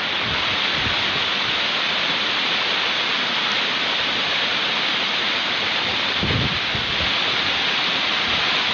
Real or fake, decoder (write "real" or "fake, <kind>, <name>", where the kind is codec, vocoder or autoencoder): real